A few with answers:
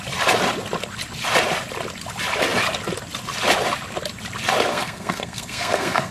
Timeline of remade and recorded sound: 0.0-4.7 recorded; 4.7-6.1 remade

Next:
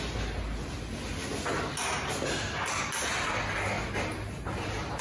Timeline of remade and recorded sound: 0.0-5.0 recorded

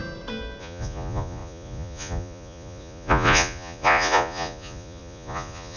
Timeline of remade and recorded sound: 0.0-0.6 recorded; 0.6-5.8 remade

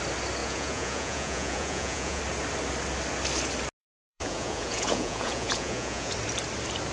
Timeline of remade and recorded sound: 0.0-0.4 recorded; 0.4-2.2 remade; 2.2-3.8 recorded; 3.8-6.1 remade; 6.1-6.9 recorded